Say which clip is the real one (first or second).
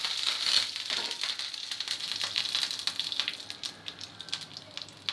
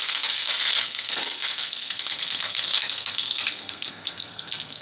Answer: first